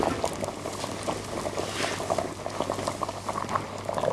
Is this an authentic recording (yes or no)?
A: yes